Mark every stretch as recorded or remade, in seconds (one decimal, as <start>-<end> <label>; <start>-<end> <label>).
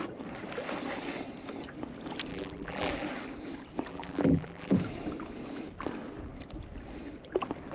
0.0-2.3 recorded; 2.3-2.9 remade; 2.9-3.9 recorded; 3.9-4.7 remade; 4.7-7.7 recorded